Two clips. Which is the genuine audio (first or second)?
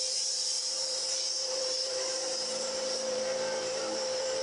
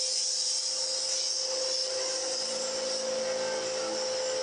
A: second